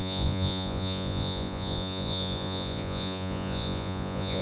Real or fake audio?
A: fake